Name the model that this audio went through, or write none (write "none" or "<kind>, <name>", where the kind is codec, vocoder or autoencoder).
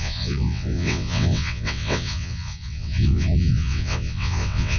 vocoder, WaveNeXt